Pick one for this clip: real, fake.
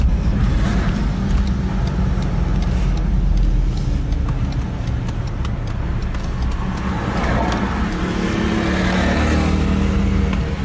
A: real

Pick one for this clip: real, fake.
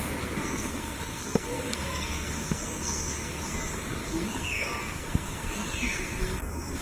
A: fake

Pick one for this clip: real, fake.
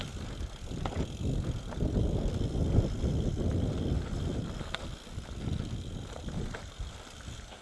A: real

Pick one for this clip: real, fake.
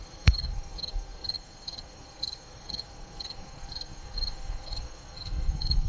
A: fake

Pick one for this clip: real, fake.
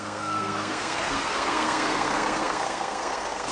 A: fake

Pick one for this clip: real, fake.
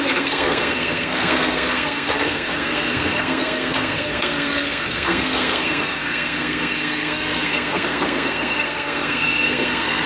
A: fake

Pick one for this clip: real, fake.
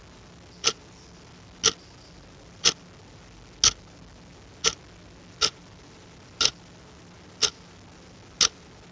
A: real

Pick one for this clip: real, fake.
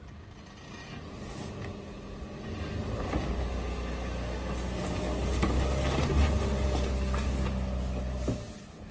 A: real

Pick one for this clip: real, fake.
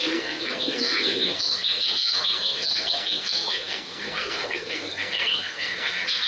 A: fake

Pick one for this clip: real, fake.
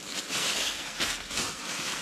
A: fake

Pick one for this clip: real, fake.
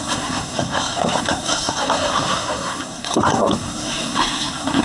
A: fake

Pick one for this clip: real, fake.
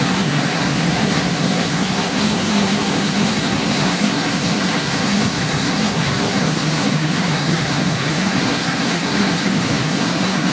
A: fake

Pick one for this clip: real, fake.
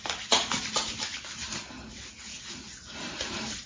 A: real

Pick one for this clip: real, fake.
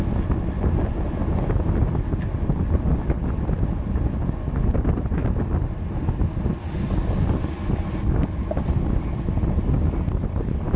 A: real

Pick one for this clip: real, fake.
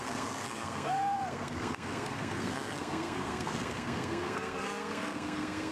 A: fake